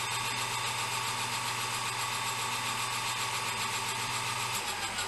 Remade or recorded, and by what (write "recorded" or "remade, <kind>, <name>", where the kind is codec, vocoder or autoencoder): recorded